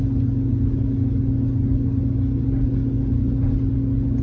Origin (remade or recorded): recorded